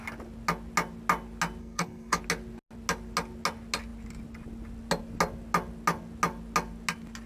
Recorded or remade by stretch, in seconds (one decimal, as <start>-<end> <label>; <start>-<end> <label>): 0.0-1.6 recorded; 1.6-2.2 remade; 2.2-7.3 recorded